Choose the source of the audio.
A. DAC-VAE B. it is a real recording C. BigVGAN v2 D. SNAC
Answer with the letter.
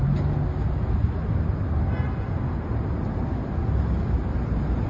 B